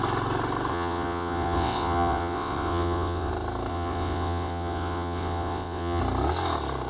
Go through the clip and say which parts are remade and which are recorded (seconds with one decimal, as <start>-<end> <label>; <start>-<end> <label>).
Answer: 0.0-0.7 recorded; 0.7-3.3 remade; 3.3-3.7 recorded; 3.7-6.0 remade; 6.0-6.9 recorded